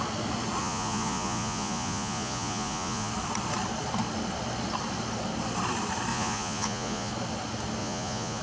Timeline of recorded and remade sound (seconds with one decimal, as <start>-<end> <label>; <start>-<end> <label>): 0.0-0.6 recorded; 0.6-3.1 remade; 3.1-6.1 recorded; 6.1-7.1 remade; 7.1-7.8 recorded; 7.8-8.4 remade

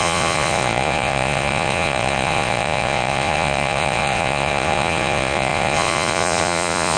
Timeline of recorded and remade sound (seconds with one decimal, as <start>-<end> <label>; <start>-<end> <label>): 0.0-7.0 remade

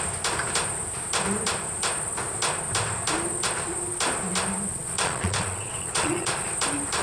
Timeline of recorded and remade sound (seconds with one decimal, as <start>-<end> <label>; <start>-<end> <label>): 0.0-4.7 recorded; 4.7-6.5 remade; 6.5-7.0 recorded

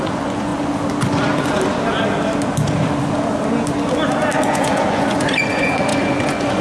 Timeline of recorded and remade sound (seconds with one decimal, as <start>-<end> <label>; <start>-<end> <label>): 0.0-0.5 remade; 0.5-4.5 recorded; 4.5-6.6 remade